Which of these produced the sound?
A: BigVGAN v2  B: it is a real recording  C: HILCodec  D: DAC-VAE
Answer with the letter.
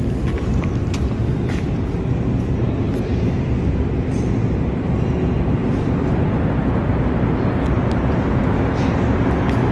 B